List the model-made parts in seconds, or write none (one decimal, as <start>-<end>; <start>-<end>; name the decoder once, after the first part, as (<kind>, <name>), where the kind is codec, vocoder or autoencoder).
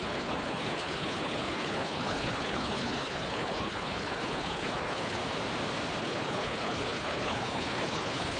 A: 0.0-5.2 (codec, HILCodec); 6.0-8.4